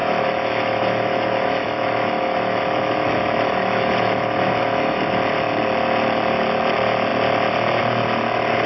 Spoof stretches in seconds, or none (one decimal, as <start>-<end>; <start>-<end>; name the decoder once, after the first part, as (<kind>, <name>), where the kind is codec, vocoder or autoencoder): 0.0-5.0 (autoencoder, DAC-VAE)